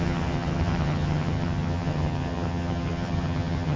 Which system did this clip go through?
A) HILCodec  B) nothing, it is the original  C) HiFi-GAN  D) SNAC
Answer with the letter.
C